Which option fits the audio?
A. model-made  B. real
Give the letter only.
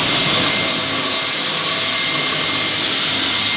B